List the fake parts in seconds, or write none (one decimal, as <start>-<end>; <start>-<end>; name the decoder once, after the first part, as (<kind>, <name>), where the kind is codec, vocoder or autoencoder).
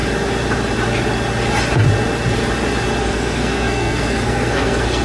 3.0-5.0 (codec, SNAC)